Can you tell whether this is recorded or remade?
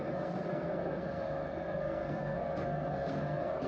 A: remade